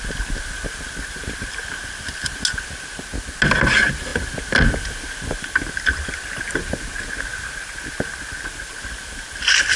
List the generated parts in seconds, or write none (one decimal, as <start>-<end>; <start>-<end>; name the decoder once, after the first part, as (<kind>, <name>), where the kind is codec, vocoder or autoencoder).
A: none